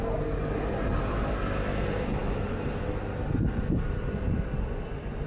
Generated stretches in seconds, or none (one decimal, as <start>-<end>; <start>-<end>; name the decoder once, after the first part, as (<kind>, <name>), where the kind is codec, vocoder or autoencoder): none

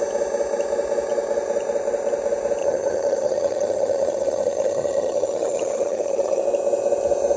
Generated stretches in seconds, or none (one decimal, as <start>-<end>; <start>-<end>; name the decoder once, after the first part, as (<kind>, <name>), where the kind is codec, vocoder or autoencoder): 2.6-6.4 (vocoder, HiFi-GAN)

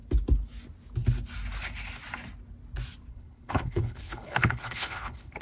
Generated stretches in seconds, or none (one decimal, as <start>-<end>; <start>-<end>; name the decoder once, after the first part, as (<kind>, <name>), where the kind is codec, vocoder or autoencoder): 3.1-5.4 (codec, HILCodec)

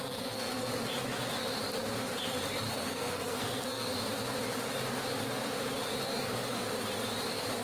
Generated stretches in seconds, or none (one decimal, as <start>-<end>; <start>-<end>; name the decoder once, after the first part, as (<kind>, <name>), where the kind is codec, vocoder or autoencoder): 0.0-0.7 (codec, SNAC); 2.7-3.9

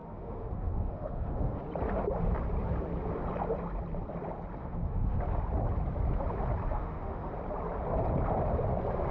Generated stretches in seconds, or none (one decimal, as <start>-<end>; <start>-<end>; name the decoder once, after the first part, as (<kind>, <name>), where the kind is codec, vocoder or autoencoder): 0.0-1.6 (autoencoder, DAC-VAE); 4.6-5.2; 6.7-7.3